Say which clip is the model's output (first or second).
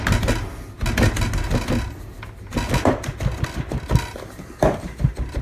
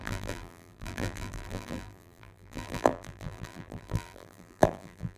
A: second